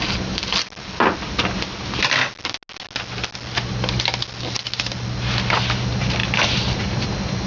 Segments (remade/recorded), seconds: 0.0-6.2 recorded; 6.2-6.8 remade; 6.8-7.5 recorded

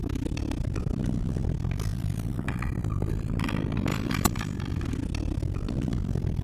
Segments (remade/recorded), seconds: 0.0-3.9 recorded; 3.9-4.6 remade; 4.6-6.4 recorded

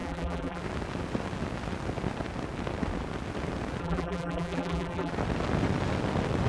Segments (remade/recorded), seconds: 0.0-0.6 remade; 0.6-3.8 recorded; 3.8-5.1 remade; 5.1-6.5 recorded

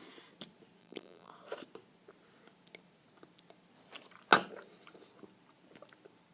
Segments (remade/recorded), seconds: 0.0-0.8 recorded; 0.8-1.3 remade; 1.3-6.3 recorded

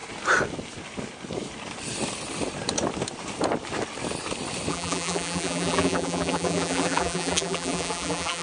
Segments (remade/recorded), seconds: 0.0-4.7 recorded; 4.7-8.4 remade

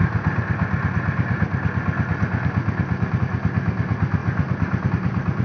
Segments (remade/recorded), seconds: 0.0-4.2 recorded; 4.2-4.9 remade; 4.9-5.4 recorded